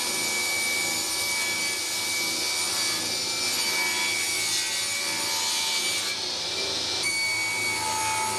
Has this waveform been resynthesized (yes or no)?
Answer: no